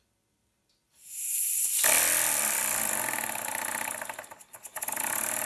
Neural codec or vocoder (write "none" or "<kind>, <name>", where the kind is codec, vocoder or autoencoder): none